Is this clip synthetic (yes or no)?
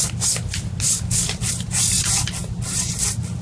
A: no